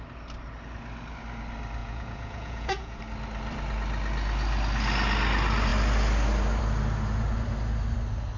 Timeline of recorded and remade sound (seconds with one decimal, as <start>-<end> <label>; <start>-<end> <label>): 0.0-1.8 recorded; 1.8-3.0 remade; 3.0-8.4 recorded